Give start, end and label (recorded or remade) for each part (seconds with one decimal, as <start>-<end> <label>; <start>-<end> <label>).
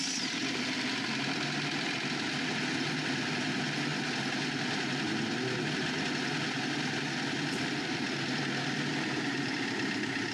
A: 0.0-10.3 recorded